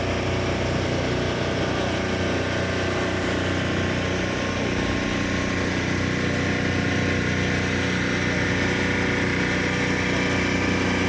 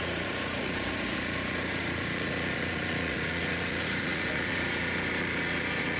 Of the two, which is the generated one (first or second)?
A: second